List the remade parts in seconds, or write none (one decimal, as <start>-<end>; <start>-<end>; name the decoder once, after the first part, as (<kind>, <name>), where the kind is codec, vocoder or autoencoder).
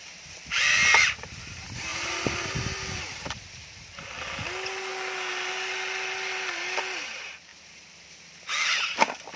0.0-0.8 (vocoder, BigVGAN v2); 1.4-4.9; 5.5-7.5; 8.8-9.4